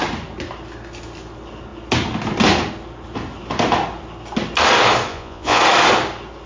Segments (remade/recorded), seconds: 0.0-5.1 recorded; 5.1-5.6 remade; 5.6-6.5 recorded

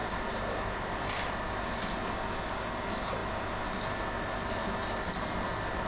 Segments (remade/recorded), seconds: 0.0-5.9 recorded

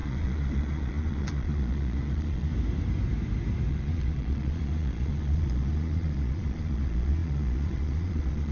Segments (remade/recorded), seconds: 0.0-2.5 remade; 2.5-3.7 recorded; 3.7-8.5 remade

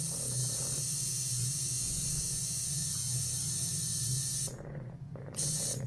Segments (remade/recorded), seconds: 0.0-5.9 remade

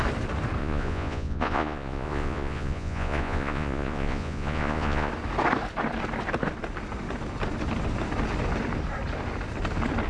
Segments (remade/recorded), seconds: 0.0-0.6 recorded; 0.6-5.1 remade; 5.1-10.1 recorded

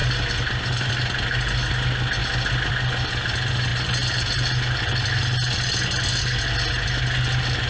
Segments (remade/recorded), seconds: 0.0-7.7 recorded